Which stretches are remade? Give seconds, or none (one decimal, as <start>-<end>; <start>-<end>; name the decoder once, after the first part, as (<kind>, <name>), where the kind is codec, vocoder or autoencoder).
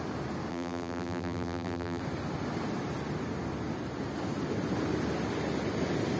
0.5-2.0 (vocoder, BigVGAN v2)